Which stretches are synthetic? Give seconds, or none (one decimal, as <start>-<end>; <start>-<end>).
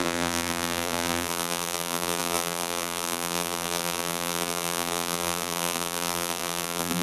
0.0-7.0